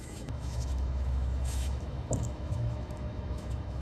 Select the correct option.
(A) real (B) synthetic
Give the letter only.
B